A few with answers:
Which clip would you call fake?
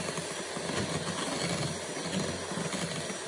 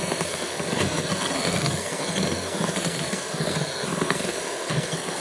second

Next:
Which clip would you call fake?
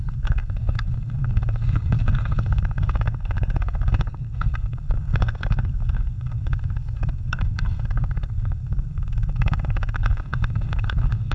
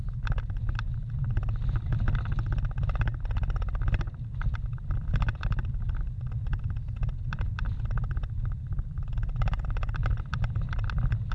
first